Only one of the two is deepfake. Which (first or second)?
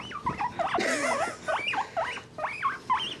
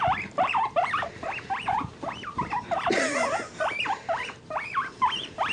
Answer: second